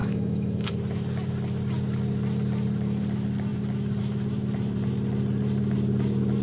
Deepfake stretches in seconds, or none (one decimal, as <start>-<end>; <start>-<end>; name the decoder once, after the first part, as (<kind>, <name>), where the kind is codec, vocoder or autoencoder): 0.0-0.7 (autoencoder, DAC-VAE)